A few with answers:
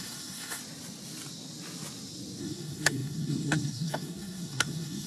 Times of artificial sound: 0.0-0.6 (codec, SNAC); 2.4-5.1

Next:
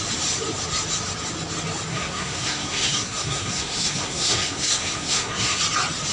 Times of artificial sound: 1.9-5.6 (codec, SNAC)

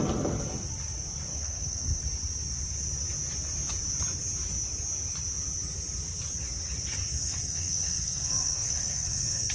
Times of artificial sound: 1.3-2.0 (codec, SNAC); 7.0-9.5

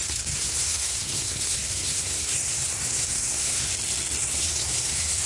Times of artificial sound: 0.0-3.7 (codec, SNAC); 4.2-5.3

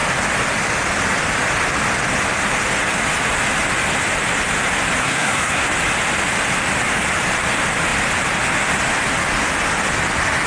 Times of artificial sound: 5.0-5.7 (codec, SNAC)

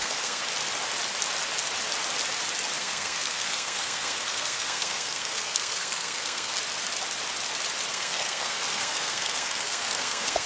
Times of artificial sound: 0.0-0.4 (codec, SNAC); 2.8-6.5; 7.9-10.5